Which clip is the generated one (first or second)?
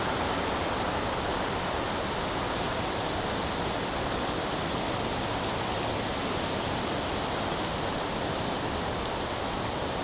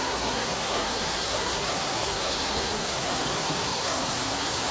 second